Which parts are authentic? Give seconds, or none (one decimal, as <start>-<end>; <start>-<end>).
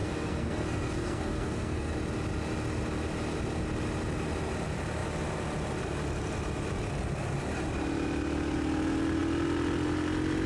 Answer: 1.9-10.5